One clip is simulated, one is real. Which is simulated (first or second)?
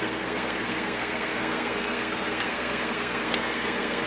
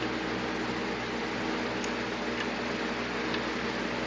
first